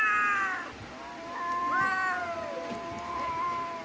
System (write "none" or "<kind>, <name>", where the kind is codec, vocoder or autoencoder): none